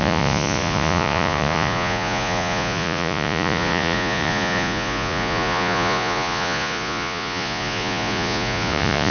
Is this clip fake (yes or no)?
yes